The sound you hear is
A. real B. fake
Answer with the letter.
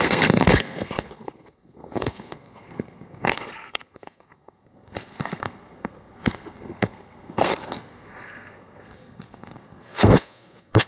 B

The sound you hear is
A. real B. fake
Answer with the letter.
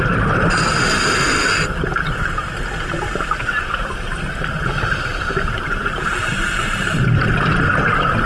A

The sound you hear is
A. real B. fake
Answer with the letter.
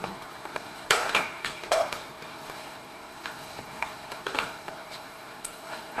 B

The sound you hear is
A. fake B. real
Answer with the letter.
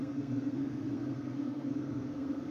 A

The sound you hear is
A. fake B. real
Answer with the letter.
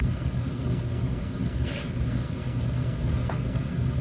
A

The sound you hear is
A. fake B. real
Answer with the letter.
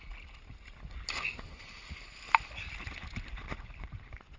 B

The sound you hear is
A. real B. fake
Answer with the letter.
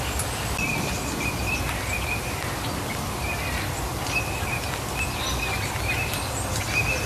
A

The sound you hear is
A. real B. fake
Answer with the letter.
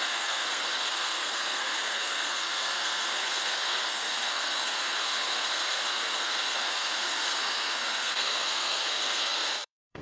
B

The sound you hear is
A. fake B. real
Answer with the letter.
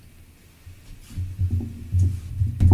B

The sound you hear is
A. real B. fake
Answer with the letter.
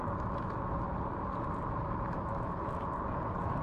A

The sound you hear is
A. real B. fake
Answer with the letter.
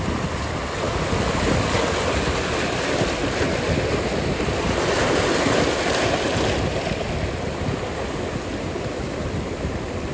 A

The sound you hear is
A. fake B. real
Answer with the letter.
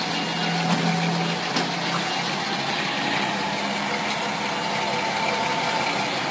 B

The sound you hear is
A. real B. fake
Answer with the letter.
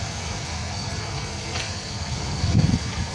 B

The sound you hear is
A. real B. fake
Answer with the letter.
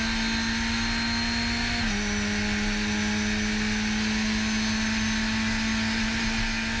A